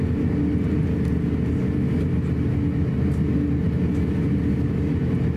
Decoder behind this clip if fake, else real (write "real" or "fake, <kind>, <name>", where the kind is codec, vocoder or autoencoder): real